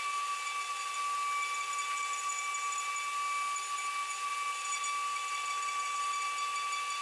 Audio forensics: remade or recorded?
recorded